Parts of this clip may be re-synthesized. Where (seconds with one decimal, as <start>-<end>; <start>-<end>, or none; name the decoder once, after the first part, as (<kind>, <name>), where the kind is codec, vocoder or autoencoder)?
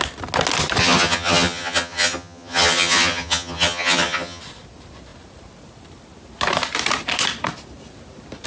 0.8-4.4 (vocoder, HiFi-GAN)